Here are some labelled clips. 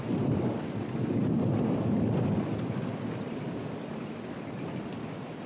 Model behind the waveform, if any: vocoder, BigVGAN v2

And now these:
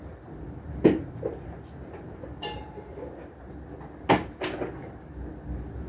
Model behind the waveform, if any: none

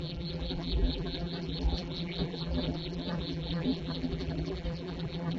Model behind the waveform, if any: vocoder, BigVGAN v2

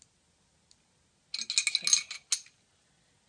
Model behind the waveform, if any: none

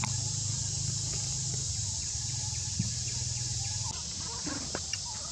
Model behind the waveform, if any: vocoder, BigVGAN v2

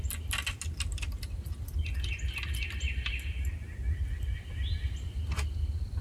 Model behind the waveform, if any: none